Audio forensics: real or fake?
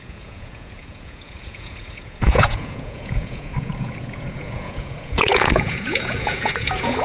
fake